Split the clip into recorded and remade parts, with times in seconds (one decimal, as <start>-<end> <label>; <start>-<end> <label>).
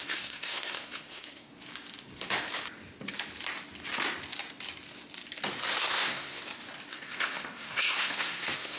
0.0-1.5 remade; 1.5-5.8 recorded; 5.8-6.4 remade; 6.4-6.9 recorded; 6.9-8.8 remade